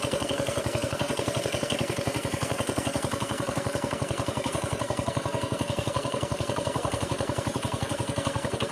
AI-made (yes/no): yes